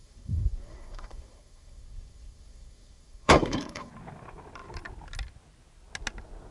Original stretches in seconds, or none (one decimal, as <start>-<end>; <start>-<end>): 3.9-6.5